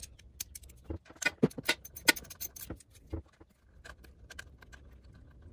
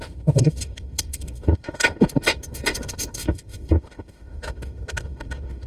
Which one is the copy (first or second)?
second